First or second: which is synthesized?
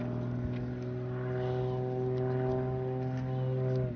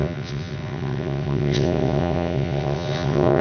second